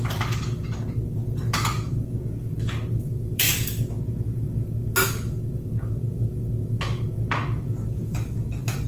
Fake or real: fake